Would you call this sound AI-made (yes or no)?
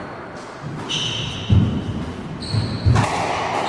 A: no